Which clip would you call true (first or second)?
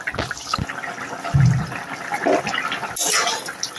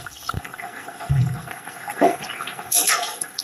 first